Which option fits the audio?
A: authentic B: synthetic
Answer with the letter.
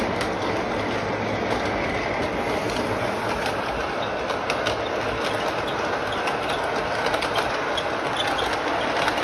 A